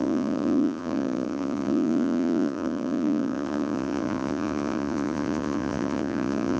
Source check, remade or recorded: remade